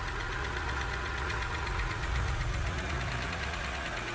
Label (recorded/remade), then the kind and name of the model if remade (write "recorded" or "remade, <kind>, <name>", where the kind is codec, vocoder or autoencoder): remade, vocoder, Vocos